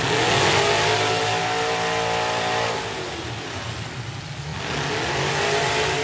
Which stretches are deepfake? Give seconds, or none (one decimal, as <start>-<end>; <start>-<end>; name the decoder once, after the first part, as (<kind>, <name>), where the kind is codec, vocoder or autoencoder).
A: none